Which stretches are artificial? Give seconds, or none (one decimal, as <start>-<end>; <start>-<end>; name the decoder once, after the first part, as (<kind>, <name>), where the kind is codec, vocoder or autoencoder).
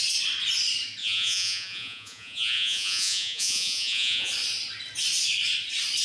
1.0-4.3 (vocoder, Vocos)